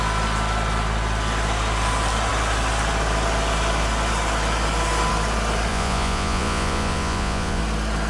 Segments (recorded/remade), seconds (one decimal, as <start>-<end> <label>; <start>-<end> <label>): 0.0-5.7 recorded; 5.7-7.6 remade; 7.6-8.1 recorded